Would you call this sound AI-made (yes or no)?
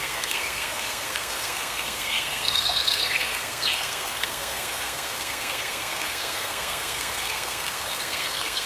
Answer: yes